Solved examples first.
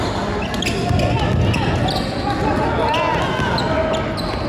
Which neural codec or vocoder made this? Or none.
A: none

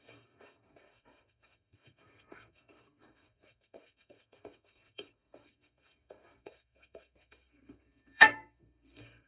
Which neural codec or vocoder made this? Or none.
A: codec, SNAC